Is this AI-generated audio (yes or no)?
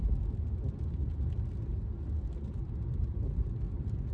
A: no